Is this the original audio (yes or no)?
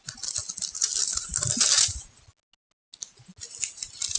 yes